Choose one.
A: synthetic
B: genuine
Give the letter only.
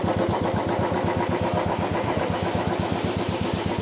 B